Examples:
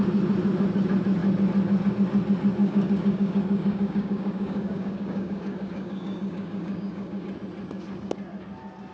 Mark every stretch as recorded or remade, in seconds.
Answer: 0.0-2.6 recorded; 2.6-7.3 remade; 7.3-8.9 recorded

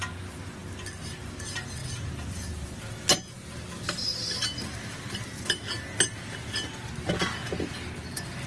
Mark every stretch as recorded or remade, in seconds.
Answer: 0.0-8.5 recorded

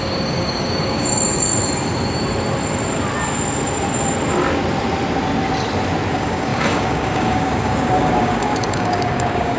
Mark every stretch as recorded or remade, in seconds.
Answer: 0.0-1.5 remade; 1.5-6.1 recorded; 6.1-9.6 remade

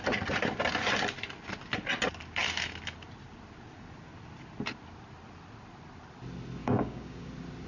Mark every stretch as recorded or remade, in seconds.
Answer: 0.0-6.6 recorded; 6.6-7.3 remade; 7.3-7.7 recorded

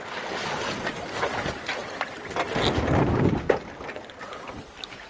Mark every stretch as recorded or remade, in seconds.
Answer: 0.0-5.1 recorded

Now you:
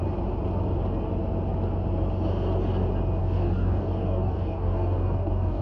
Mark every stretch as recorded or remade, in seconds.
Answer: 0.0-3.2 recorded; 3.2-5.6 remade

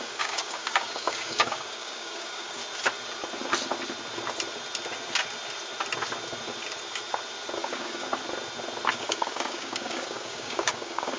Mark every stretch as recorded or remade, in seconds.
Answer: 0.0-2.6 remade; 2.6-7.6 recorded; 7.6-8.1 remade; 8.1-8.9 recorded; 8.9-11.2 remade